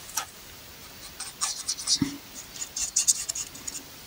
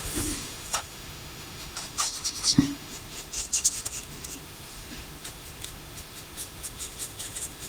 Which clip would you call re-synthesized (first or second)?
second